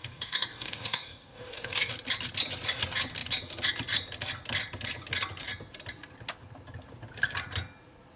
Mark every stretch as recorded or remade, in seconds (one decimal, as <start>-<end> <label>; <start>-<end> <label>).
0.0-1.9 remade; 1.9-8.2 recorded